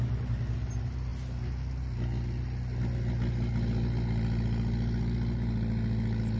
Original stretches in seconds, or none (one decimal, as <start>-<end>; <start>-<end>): 0.0-6.4